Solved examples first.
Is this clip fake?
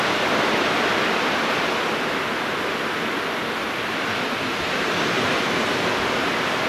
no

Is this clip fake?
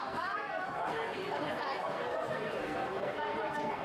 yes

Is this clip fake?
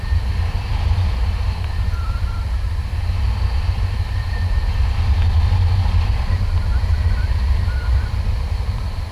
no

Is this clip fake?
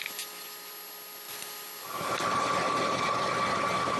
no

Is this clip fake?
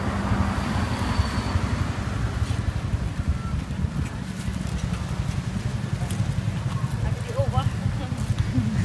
no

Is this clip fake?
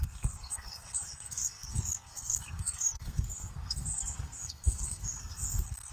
yes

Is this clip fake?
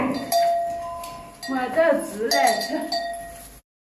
no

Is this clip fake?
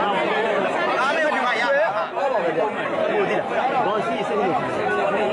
no